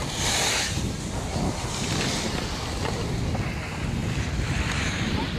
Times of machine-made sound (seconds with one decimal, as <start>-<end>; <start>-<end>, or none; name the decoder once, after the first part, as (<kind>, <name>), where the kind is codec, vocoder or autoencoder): 4.0-4.8 (vocoder, BigVGAN v2)